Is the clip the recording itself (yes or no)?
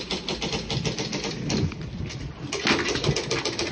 yes